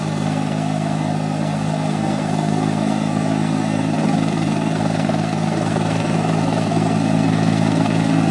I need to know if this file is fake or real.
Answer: fake